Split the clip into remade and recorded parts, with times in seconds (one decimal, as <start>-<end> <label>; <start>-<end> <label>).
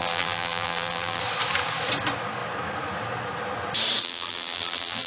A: 0.0-1.2 remade; 1.2-4.0 recorded; 4.0-5.1 remade